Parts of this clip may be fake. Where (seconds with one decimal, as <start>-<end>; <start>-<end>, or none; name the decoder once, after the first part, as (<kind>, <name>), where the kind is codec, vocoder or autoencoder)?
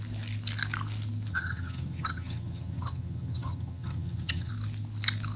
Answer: 1.3-4.5 (vocoder, HiFi-GAN)